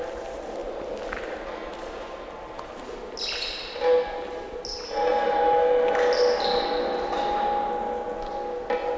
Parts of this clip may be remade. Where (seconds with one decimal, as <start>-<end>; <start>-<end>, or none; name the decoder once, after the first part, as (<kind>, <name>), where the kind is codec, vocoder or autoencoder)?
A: none